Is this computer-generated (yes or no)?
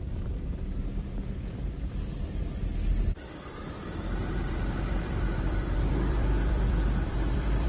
yes